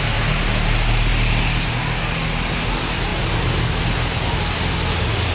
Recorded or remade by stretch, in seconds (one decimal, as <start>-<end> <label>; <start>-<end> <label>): 0.0-5.3 recorded